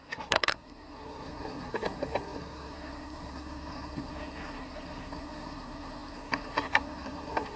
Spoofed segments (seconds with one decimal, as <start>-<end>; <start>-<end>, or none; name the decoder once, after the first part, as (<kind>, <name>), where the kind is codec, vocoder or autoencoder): 0.0-7.6 (codec, SNAC)